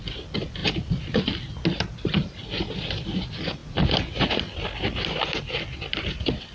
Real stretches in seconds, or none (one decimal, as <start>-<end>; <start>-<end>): 0.0-6.5